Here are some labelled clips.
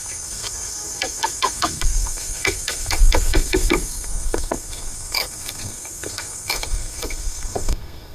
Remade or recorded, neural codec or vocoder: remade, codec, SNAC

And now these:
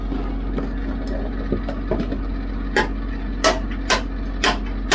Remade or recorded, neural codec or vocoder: recorded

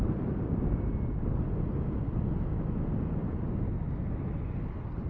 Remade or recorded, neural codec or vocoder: recorded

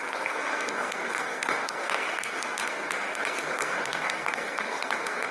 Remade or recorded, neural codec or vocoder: remade, codec, SNAC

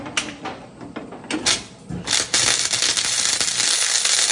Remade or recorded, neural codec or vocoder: recorded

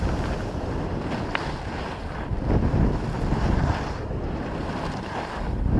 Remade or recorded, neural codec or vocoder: recorded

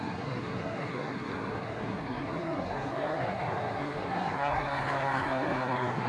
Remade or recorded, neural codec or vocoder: remade, codec, SNAC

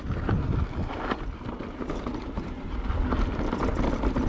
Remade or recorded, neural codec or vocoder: recorded